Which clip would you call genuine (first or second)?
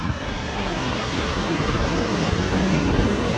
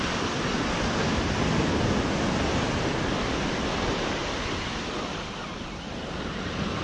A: second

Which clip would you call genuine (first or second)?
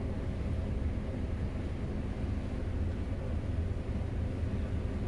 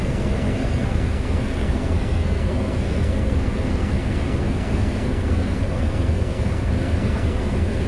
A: first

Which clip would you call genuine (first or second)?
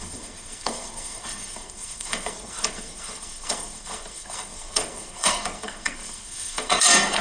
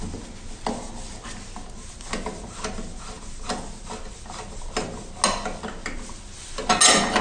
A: second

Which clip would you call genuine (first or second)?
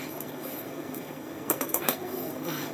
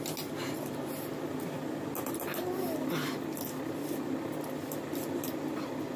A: second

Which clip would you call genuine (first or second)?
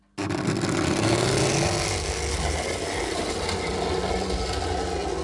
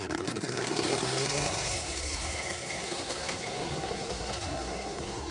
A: first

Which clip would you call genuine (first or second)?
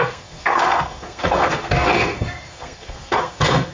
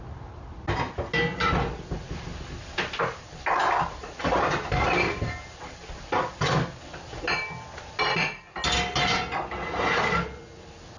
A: second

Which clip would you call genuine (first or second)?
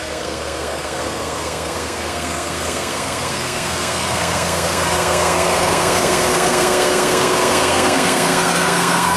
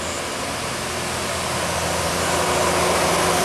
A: second